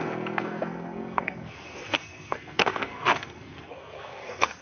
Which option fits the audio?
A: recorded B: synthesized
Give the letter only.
B